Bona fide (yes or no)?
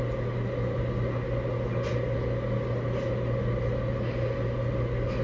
yes